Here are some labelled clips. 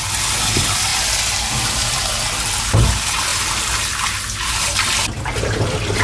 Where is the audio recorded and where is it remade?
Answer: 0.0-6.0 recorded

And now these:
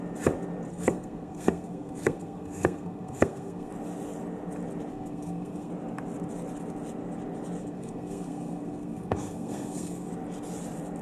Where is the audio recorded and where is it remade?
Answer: 0.0-0.7 recorded; 0.7-3.7 remade; 3.7-4.9 recorded; 4.9-5.7 remade; 5.7-7.6 recorded; 7.6-10.1 remade; 10.1-11.0 recorded

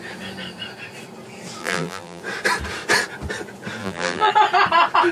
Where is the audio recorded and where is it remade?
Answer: 0.0-1.6 recorded; 1.6-2.2 remade; 2.2-3.8 recorded; 3.8-4.3 remade; 4.3-5.1 recorded